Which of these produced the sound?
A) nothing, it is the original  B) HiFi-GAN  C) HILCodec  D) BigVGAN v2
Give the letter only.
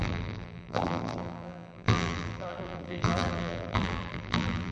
D